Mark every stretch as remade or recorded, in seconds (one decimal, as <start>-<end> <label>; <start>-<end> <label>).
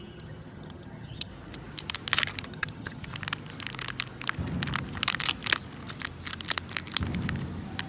0.0-1.3 remade; 1.3-2.4 recorded; 2.4-3.1 remade; 3.1-7.9 recorded